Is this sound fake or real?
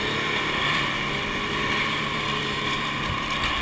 fake